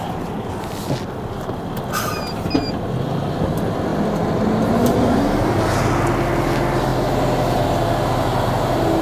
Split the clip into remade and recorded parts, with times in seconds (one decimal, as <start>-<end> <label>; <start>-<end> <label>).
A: 0.0-9.0 recorded